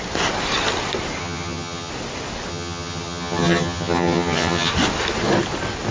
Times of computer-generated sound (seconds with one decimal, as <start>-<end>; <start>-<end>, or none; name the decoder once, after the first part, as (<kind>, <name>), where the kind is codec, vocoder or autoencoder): 1.2-1.9 (vocoder, HiFi-GAN); 2.5-4.7